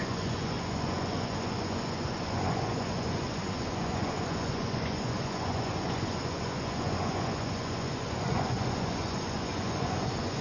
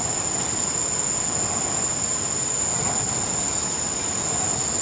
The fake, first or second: first